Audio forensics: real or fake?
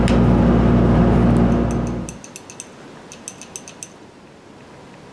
real